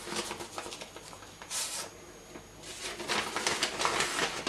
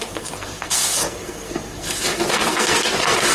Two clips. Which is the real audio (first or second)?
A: first